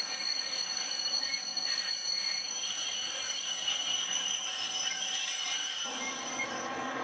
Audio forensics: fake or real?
fake